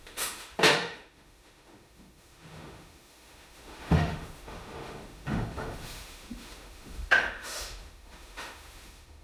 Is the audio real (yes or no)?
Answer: no